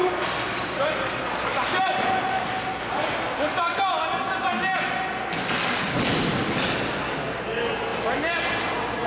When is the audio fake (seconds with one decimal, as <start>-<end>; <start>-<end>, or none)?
0.0-1.2; 7.9-8.7